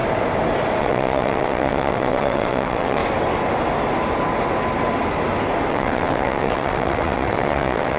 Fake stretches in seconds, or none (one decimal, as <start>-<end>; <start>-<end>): 0.8-3.0; 5.7-8.0